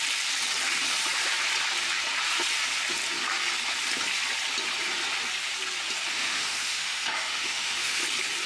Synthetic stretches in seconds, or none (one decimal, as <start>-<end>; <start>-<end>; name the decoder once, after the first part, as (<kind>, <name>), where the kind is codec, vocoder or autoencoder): 6.1-8.0 (autoencoder, DAC-VAE)